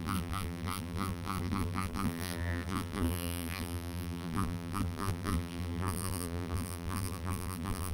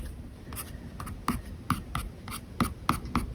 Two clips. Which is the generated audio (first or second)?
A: first